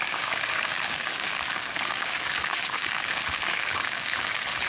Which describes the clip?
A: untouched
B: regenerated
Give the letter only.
B